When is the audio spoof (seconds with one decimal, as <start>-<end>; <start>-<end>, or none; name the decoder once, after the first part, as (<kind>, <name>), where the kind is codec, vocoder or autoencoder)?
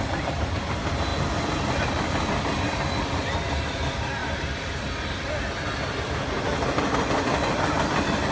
none